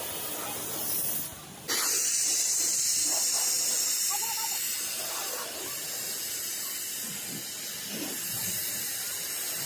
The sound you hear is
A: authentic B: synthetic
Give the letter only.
A